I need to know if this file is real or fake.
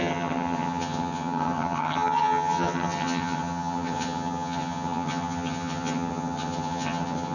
fake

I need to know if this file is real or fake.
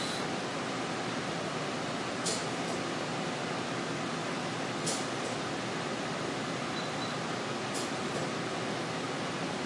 real